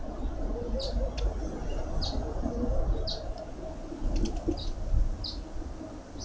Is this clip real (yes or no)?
yes